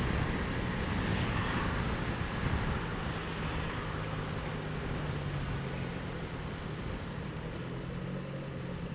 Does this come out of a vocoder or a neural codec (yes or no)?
no